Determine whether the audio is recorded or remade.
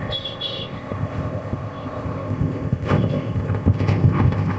remade